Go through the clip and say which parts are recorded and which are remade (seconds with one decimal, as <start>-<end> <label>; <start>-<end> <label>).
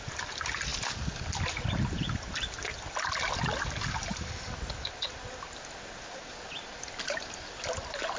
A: 0.0-8.2 recorded